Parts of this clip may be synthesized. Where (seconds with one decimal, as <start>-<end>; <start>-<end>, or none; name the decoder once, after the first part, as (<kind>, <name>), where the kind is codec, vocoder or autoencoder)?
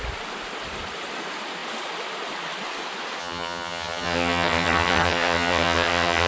3.2-6.3 (vocoder, HiFi-GAN)